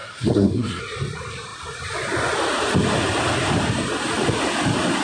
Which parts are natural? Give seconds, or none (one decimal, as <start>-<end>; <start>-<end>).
0.8-5.0